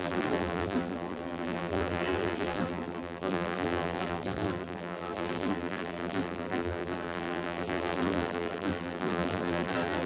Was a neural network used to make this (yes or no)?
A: yes